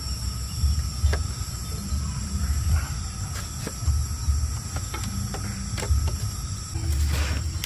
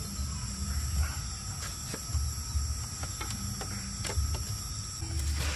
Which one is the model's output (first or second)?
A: first